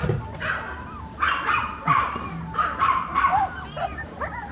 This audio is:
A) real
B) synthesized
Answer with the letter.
A